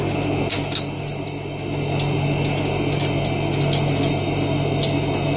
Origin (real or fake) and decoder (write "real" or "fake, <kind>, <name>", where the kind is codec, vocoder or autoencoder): real